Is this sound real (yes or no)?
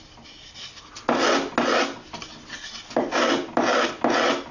yes